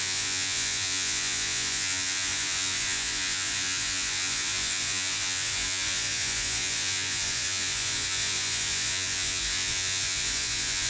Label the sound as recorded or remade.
remade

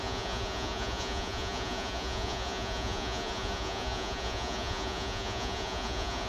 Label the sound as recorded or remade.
remade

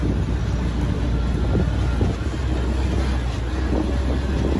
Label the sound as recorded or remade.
recorded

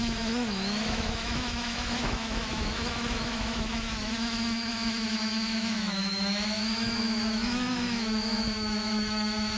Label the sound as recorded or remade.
remade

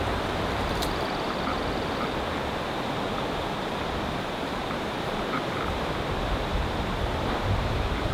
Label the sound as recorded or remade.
remade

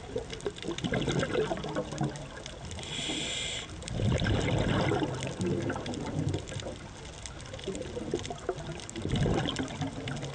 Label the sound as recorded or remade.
recorded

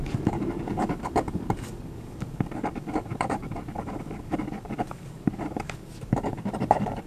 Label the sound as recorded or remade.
remade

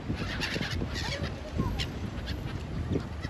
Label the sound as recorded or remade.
recorded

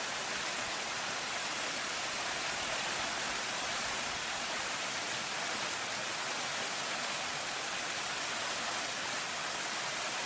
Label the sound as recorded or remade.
recorded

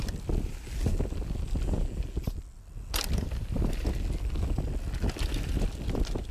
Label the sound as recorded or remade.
recorded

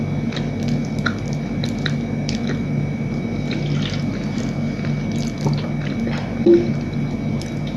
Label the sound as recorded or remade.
recorded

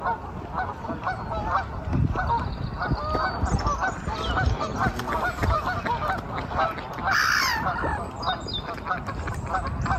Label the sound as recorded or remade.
recorded